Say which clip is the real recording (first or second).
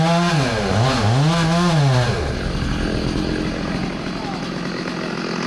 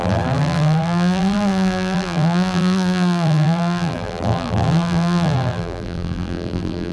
first